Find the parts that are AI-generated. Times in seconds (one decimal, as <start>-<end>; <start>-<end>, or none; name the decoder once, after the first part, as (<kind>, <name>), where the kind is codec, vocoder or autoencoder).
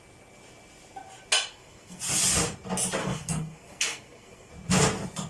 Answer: 1.5-2.0 (codec, SNAC); 3.0-4.5